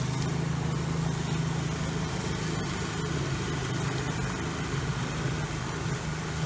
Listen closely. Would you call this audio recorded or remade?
recorded